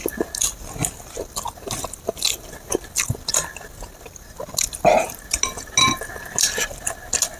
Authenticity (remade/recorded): recorded